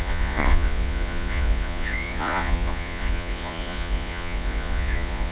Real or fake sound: fake